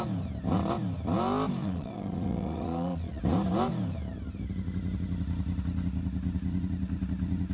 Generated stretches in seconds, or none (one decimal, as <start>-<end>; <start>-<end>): 1.6-3.2